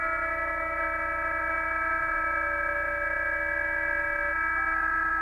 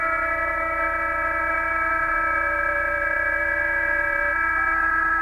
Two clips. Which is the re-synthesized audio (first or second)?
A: second